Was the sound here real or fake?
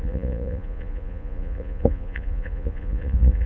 fake